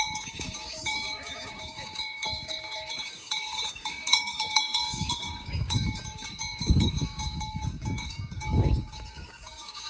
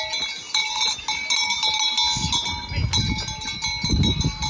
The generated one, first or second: first